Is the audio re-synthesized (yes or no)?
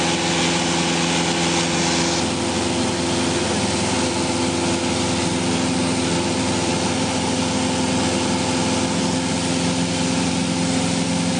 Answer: no